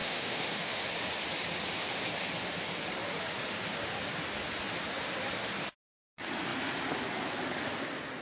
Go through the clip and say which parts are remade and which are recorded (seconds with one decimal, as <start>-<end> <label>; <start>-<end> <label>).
0.0-0.8 remade; 0.8-8.2 recorded